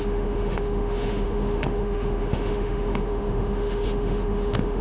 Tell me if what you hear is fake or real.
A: fake